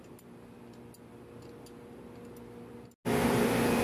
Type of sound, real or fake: real